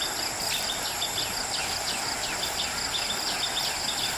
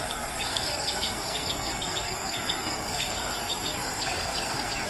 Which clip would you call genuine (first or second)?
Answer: first